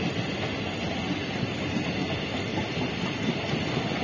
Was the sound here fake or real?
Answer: real